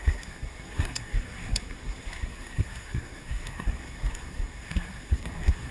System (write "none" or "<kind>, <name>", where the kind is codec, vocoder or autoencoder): codec, SNAC